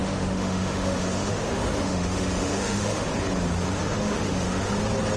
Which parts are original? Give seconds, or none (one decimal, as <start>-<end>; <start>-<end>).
3.1-3.8; 4.7-5.2